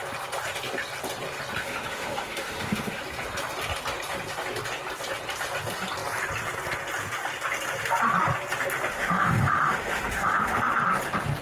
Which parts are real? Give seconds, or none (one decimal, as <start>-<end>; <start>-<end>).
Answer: 0.0-1.6; 3.0-8.9; 10.6-11.4